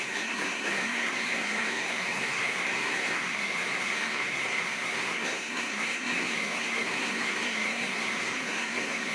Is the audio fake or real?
fake